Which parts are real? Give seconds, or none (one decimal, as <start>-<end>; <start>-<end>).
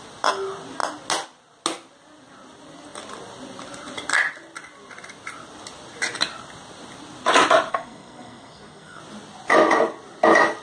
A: 0.0-7.7; 9.0-10.6